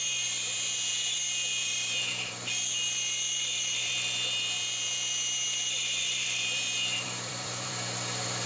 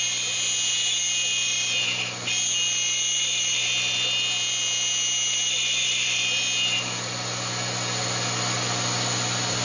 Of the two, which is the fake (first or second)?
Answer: first